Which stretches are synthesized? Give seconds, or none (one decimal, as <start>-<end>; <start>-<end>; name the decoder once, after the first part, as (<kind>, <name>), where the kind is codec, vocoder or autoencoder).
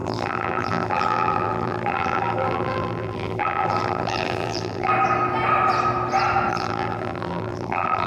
0.0-4.9 (vocoder, BigVGAN v2); 6.5-8.1